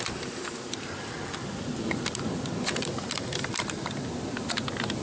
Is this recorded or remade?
recorded